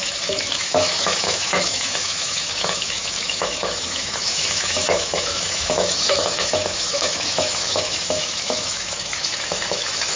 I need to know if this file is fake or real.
fake